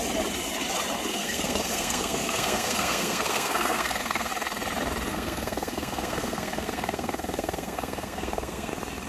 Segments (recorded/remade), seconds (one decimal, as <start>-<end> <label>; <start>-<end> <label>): 0.0-1.1 recorded; 1.1-4.3 remade; 4.3-5.1 recorded; 5.1-8.7 remade; 8.7-9.1 recorded